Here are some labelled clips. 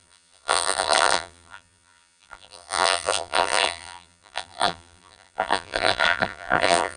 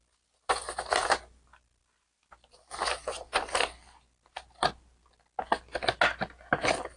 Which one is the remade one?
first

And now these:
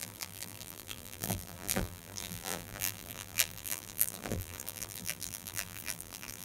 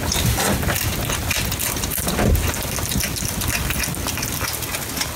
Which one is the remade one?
first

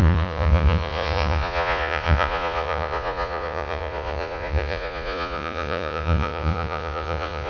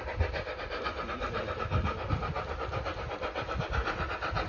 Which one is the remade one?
first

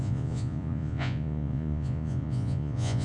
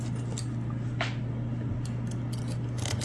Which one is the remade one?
first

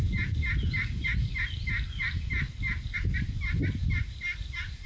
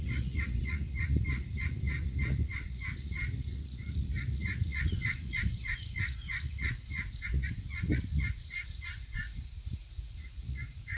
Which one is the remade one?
second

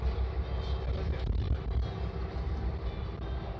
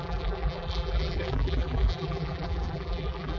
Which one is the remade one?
second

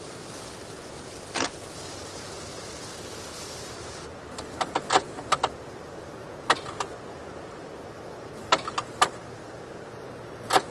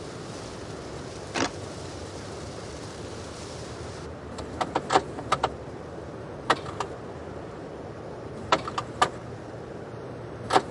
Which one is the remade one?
second